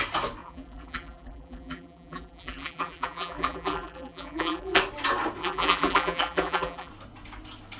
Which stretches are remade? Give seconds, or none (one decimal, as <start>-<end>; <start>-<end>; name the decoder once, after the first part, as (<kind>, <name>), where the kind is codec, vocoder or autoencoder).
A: 0.4-4.8 (vocoder, BigVGAN v2); 5.4-6.9